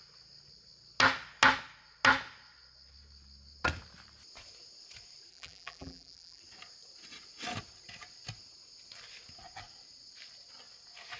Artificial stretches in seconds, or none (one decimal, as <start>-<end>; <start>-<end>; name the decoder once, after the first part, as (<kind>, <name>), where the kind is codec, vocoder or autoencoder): 5.3-6.4 (vocoder, BigVGAN v2)